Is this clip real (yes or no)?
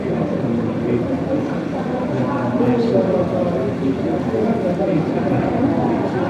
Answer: yes